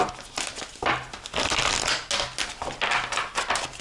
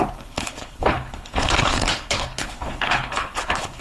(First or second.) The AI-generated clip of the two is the second